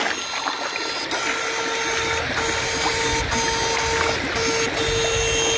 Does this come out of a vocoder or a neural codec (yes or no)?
no